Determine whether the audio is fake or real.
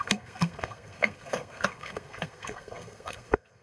fake